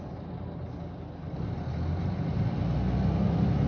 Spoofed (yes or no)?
no